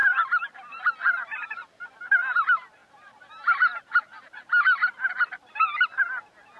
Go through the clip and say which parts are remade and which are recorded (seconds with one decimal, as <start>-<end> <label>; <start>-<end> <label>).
0.0-6.6 remade